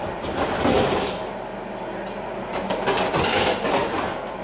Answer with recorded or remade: recorded